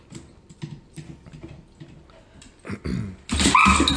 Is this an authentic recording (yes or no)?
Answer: yes